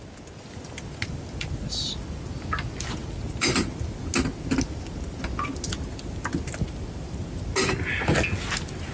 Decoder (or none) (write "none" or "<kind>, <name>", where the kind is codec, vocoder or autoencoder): none